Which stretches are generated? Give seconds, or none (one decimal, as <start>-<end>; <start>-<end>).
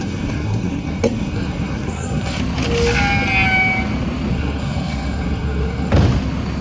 0.0-2.4; 4.3-5.9